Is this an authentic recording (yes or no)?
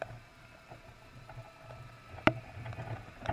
yes